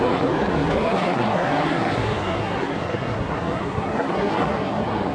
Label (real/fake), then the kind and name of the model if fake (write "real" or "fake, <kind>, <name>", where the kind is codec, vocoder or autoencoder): fake, codec, SNAC